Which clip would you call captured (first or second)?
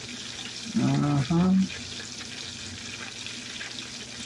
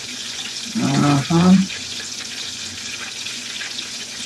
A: first